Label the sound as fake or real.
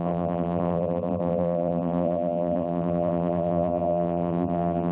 fake